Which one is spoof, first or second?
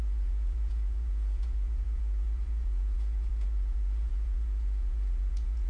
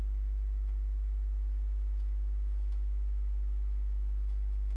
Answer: first